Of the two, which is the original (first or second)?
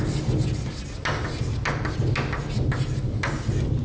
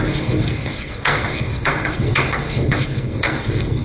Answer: first